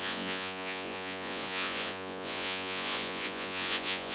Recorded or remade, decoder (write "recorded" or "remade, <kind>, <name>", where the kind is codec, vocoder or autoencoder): remade, vocoder, Vocos